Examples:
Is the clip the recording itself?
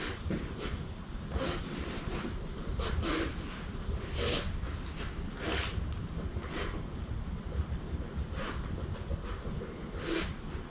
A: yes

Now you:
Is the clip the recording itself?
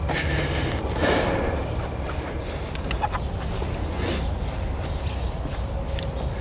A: yes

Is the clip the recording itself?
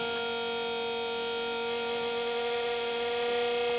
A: yes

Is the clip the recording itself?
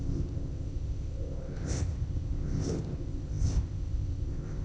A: no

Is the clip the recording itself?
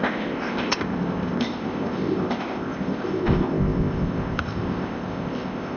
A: no